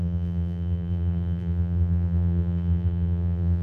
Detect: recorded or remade remade